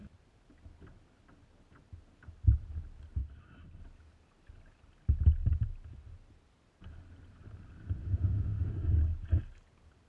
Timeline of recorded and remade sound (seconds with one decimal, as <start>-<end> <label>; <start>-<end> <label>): 0.0-8.0 recorded; 8.0-8.7 remade; 8.7-10.1 recorded